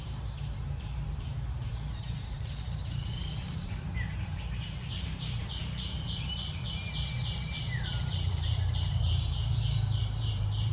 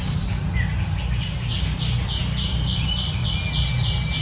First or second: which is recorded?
second